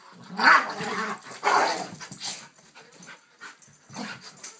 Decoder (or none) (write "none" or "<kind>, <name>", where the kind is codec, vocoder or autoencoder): none